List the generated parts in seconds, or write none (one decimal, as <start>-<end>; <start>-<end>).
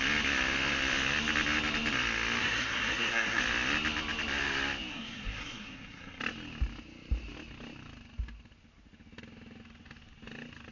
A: 2.4-3.4; 4.9-6.2